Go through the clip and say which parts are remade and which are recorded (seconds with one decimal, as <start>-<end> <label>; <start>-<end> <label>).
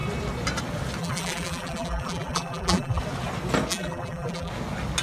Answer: 0.0-1.0 recorded; 1.0-3.0 remade; 3.0-3.7 recorded; 3.7-4.5 remade; 4.5-5.0 recorded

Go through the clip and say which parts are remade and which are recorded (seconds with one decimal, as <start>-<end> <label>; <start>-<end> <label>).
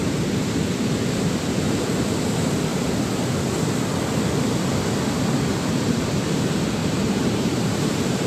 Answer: 0.0-6.8 recorded; 6.8-8.3 remade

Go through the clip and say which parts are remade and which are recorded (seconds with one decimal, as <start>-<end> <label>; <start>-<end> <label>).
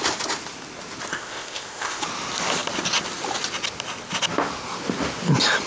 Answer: 0.0-1.1 recorded; 1.1-2.0 remade; 2.0-5.7 recorded